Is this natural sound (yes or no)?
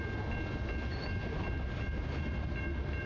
yes